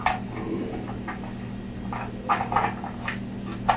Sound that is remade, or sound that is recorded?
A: recorded